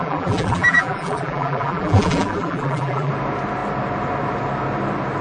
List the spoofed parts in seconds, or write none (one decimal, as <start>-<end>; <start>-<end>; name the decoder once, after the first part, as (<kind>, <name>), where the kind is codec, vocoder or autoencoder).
0.0-3.1 (vocoder, BigVGAN v2)